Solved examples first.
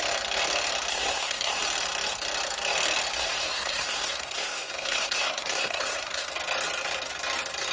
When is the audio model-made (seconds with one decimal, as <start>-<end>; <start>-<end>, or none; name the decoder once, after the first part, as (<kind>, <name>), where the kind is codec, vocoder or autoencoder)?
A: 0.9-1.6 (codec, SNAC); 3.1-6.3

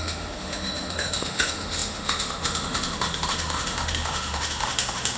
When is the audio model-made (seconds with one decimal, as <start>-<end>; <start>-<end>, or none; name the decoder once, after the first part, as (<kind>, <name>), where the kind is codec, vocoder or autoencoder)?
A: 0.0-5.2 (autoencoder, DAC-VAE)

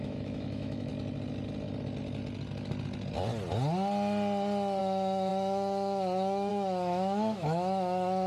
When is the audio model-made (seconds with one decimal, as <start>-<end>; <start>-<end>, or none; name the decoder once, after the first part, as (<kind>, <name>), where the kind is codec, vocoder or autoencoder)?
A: 0.0-0.9 (autoencoder, DAC-VAE); 4.8-8.3

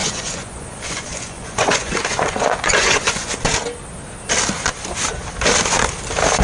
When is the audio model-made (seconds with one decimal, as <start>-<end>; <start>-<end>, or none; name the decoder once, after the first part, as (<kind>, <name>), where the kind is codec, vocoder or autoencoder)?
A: 0.0-3.3 (vocoder, Vocos)

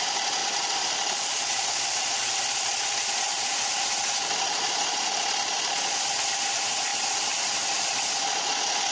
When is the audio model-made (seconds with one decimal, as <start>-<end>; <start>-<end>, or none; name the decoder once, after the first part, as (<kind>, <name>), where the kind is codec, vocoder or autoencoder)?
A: 0.4-1.4 (vocoder, BigVGAN v2)

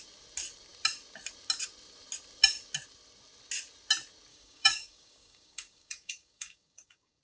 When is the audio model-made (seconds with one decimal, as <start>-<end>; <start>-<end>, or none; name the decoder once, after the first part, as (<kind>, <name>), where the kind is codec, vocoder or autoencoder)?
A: 4.3-7.2 (codec, DAC)

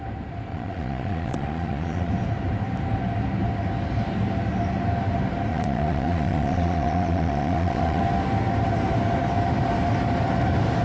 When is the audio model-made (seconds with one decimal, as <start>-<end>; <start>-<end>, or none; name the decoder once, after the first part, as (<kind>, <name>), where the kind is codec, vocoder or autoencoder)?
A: 0.5-2.1 (vocoder, Vocos); 5.5-8.0